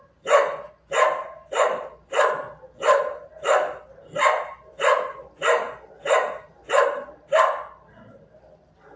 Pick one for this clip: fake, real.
real